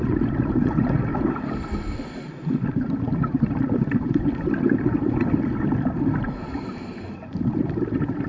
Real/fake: real